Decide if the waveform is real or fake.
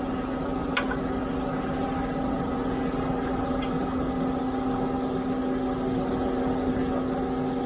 real